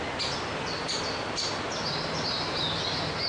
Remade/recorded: recorded